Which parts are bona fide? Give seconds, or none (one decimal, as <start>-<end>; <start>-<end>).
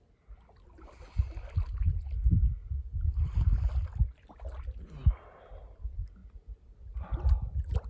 0.0-7.9